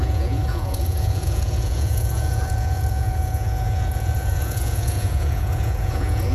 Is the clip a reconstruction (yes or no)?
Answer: yes